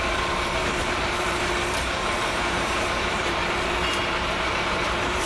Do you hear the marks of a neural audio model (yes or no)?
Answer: yes